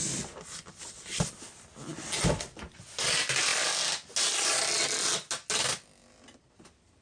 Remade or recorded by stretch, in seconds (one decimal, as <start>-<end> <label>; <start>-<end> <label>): 0.0-7.0 recorded